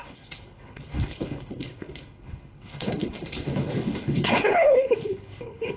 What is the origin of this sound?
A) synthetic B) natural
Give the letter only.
A